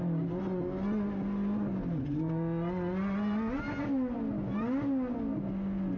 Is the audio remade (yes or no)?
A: no